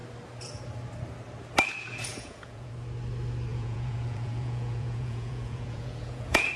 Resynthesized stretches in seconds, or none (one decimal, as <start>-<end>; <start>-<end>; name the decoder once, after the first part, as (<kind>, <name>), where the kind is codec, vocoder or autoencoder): 2.1-2.7 (vocoder, Vocos); 3.5-6.6